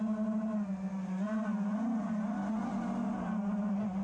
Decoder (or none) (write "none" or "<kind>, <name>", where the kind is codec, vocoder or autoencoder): none